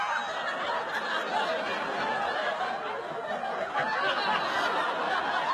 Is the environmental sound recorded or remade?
recorded